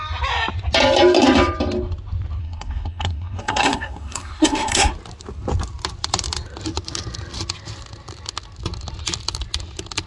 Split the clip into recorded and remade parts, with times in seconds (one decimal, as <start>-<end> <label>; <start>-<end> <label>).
0.0-2.4 recorded; 2.4-4.9 remade; 4.9-10.1 recorded